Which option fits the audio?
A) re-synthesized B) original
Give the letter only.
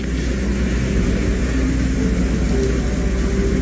B